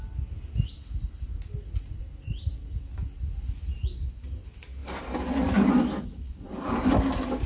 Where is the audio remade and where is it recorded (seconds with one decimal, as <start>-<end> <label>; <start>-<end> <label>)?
0.0-7.5 recorded